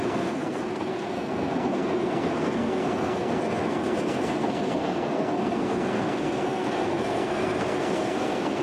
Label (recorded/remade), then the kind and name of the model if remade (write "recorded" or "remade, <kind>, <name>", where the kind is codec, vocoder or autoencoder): remade, codec, SNAC